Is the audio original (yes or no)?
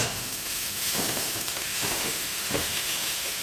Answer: no